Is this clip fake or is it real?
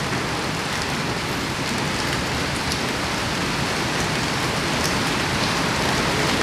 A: fake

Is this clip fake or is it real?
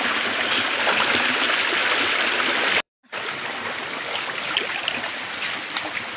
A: real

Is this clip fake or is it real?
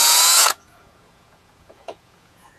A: fake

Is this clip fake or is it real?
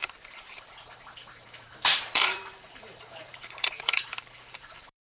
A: fake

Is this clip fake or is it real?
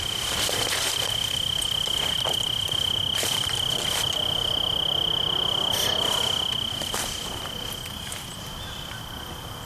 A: real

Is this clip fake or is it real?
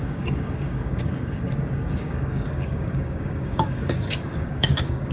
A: fake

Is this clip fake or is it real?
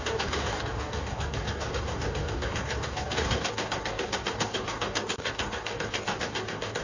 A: fake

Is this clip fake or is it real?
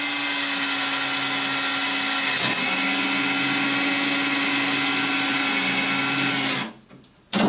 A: real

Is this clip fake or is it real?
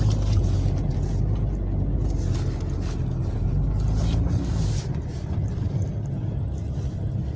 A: real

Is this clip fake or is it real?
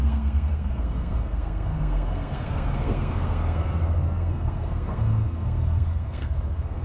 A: fake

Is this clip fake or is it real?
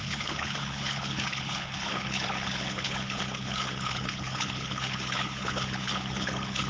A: fake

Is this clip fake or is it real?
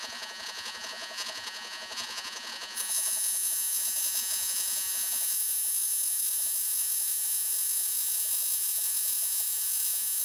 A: fake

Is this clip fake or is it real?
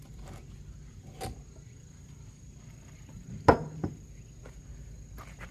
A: real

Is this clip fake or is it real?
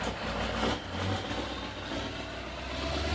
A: real